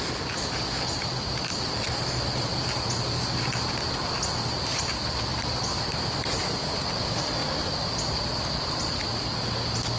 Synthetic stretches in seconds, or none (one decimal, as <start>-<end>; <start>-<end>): none